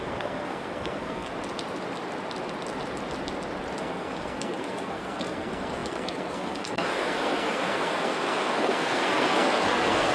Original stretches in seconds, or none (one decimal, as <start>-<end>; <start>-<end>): 1.3-3.8